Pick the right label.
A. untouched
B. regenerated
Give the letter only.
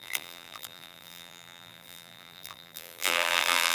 B